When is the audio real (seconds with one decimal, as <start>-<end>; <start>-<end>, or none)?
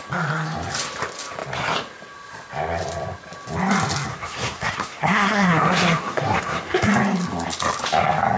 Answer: 0.0-4.1; 6.9-8.4